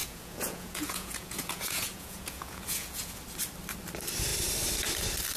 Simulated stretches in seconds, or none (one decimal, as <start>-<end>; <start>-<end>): 0.0-3.2